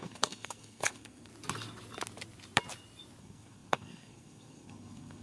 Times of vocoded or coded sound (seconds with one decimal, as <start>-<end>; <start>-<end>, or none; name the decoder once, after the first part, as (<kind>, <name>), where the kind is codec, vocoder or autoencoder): 0.0-1.3 (codec, SNAC); 3.2-5.2